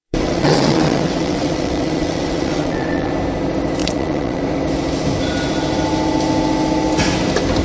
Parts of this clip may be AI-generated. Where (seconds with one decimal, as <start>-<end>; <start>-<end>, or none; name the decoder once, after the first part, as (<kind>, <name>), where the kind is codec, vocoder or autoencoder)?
0.0-3.1 (vocoder, WaveNeXt); 3.8-4.4